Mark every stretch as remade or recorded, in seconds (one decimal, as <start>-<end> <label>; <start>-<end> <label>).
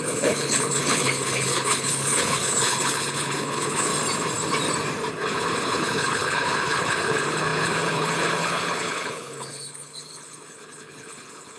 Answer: 0.0-3.9 remade; 3.9-5.1 recorded; 5.1-11.6 remade